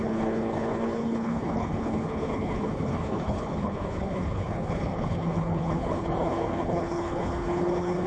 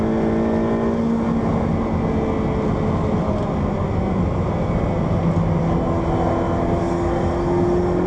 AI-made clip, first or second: first